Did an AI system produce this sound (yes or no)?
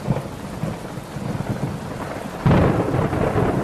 no